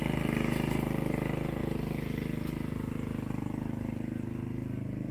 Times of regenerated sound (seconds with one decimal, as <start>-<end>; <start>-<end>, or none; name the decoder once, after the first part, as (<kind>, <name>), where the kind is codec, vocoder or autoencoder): none